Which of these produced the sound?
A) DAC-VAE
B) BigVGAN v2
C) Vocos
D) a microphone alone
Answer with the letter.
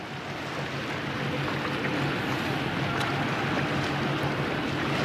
D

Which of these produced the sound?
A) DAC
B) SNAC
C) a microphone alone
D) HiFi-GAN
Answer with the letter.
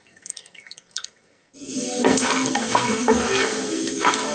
B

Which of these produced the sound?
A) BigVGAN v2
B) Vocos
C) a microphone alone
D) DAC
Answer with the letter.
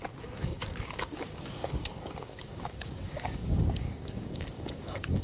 D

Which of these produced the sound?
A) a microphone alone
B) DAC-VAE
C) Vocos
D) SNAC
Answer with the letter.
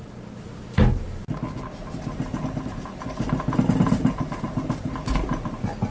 A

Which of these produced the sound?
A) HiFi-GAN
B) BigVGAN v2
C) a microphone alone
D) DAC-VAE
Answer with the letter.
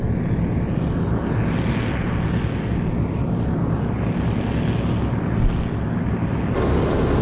C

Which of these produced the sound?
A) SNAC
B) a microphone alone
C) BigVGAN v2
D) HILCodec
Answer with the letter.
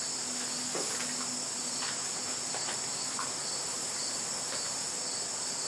B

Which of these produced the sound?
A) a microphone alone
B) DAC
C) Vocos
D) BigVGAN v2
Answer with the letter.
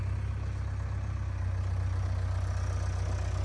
A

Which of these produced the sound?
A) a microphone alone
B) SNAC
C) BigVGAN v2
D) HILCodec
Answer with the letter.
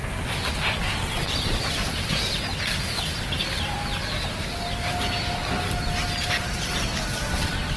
A